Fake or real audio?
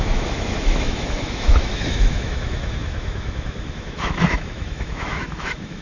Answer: fake